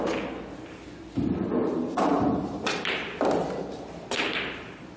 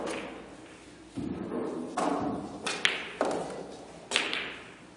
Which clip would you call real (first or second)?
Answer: second